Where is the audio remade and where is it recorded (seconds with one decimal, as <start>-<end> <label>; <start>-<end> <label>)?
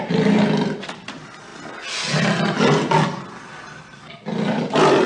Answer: 0.0-5.1 recorded